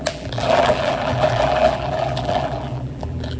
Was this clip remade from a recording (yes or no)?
yes